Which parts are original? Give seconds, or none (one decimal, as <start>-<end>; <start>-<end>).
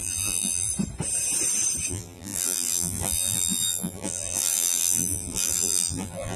0.7-1.9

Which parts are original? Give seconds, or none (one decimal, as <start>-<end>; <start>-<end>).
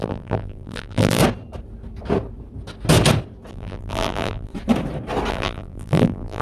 1.2-3.5; 4.5-5.3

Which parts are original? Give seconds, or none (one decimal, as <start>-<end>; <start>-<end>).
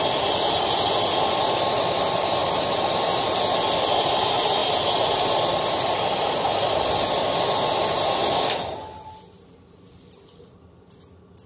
0.0-2.4; 3.1-11.5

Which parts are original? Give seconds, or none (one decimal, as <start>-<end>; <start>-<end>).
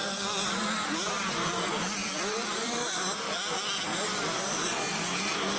0.7-2.0; 3.0-5.6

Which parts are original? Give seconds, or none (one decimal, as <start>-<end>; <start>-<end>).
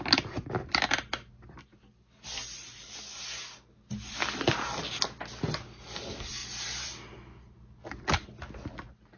0.0-6.4; 7.1-9.2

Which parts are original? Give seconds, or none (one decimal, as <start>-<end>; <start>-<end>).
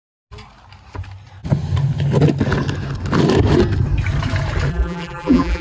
0.0-4.7